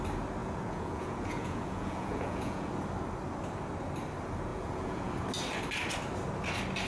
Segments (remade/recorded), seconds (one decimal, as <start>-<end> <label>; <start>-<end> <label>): 0.0-0.4 recorded; 0.4-2.7 remade; 2.7-4.5 recorded; 4.5-5.1 remade; 5.1-6.9 recorded